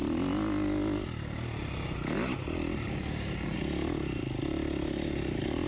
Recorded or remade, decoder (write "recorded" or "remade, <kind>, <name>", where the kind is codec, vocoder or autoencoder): recorded